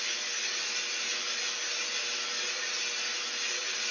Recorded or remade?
recorded